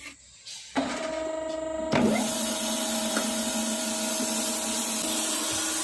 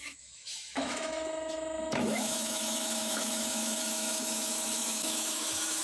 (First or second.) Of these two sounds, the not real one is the second